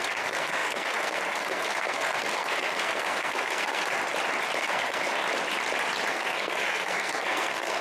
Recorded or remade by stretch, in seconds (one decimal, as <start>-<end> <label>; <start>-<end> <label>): 0.0-4.0 remade; 4.0-4.6 recorded; 4.6-5.2 remade; 5.2-6.1 recorded; 6.1-7.8 remade